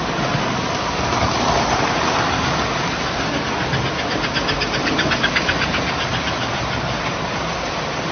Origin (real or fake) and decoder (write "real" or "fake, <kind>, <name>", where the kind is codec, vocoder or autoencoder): real